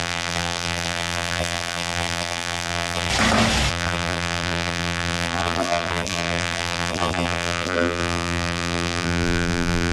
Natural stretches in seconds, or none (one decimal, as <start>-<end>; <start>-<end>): 3.1-3.7